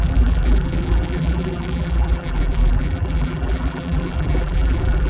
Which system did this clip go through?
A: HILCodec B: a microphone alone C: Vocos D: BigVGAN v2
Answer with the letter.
D